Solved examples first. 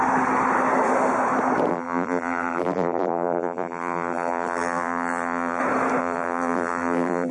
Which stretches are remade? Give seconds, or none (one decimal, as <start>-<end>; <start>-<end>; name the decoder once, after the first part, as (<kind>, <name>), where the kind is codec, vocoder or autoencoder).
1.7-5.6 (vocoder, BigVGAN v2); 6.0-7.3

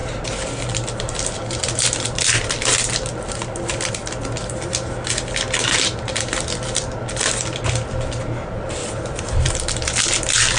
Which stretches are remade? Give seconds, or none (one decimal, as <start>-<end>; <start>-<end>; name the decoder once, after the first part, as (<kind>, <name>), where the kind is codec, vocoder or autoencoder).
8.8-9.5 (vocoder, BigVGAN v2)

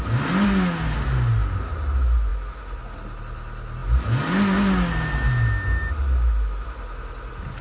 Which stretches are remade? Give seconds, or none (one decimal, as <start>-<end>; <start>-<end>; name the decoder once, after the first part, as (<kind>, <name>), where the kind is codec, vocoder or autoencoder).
none